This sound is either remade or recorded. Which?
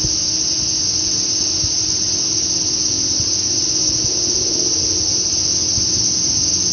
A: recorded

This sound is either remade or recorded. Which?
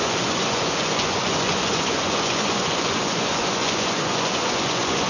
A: remade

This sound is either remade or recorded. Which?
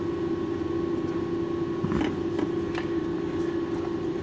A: recorded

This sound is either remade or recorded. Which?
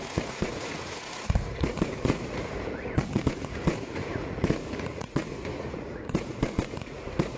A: remade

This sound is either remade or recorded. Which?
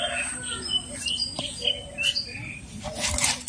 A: recorded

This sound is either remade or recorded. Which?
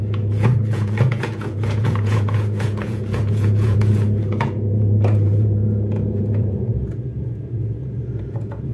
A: remade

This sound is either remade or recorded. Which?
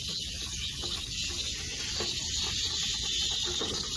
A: recorded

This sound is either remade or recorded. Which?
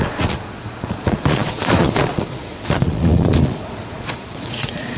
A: remade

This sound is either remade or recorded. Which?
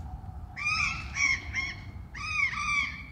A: recorded